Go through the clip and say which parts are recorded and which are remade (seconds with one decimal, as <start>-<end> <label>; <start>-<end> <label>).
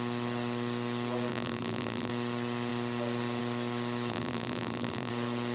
0.0-1.3 recorded; 1.3-2.1 remade; 2.1-4.1 recorded; 4.1-5.1 remade; 5.1-5.5 recorded